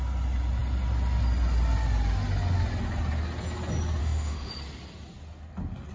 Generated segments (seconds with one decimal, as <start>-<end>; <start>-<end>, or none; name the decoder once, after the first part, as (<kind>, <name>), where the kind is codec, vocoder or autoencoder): 4.0-4.5 (autoencoder, DAC-VAE)